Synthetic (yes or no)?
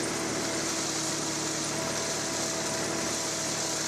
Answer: no